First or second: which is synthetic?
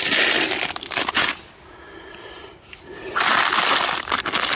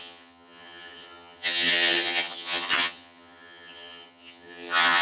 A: second